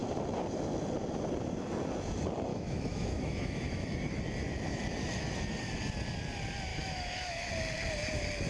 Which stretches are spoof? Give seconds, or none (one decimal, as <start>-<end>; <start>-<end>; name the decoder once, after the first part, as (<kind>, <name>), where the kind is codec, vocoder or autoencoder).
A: 2.5-4.2 (autoencoder, DAC-VAE); 6.7-7.5